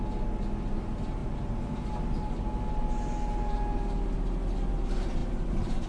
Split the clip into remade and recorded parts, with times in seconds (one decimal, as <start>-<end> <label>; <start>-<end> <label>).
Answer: 0.0-5.9 recorded